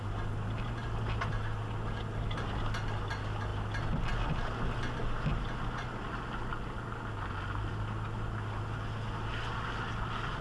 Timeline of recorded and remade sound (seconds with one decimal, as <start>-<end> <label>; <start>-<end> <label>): 0.0-10.4 recorded